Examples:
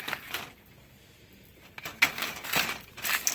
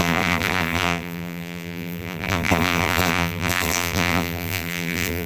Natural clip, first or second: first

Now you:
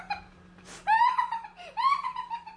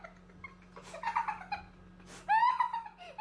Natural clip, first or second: second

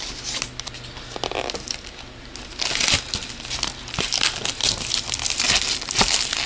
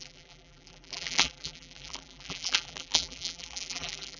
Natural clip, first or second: first